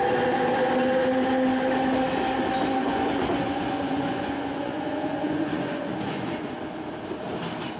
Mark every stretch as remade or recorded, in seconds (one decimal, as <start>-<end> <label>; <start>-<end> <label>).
0.0-2.8 recorded; 2.8-6.6 remade; 6.6-7.8 recorded